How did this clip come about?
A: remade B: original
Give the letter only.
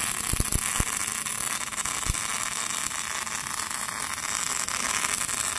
B